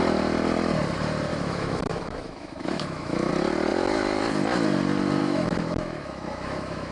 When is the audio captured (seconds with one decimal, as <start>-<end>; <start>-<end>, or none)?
0.0-1.3; 3.3-5.2